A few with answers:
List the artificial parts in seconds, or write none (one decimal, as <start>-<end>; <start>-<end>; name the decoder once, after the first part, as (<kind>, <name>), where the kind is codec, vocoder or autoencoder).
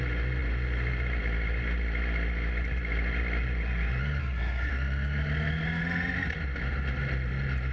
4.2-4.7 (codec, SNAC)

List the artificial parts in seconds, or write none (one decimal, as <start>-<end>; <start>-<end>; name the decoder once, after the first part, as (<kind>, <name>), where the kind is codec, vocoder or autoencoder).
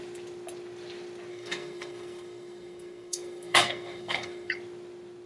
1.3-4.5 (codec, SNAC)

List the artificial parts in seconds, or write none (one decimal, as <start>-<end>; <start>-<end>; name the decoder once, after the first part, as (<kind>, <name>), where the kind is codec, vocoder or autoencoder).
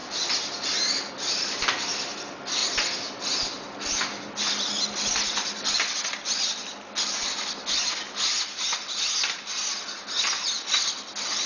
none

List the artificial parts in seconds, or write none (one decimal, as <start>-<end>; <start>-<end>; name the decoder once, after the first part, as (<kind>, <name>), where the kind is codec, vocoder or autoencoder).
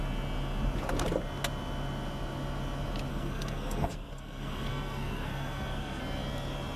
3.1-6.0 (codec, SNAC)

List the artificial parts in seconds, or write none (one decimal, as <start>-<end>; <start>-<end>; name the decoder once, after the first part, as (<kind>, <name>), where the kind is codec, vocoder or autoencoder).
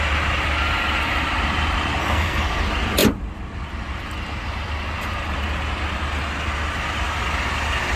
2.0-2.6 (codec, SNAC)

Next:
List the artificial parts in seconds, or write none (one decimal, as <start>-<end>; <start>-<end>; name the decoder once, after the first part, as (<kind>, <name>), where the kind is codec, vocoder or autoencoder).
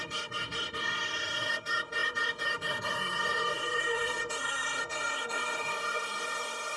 0.0-6.8 (codec, SNAC)